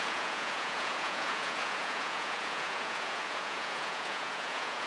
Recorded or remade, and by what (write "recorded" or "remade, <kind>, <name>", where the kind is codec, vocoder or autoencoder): remade, vocoder, Vocos